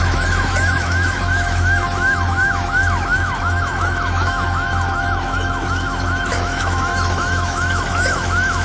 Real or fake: fake